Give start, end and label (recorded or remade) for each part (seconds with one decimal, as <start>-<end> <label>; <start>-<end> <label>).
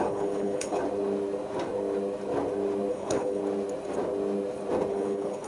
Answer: 0.0-0.8 remade; 0.8-2.9 recorded; 2.9-3.4 remade; 3.4-4.9 recorded; 4.9-5.5 remade